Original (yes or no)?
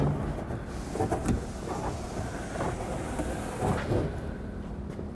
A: yes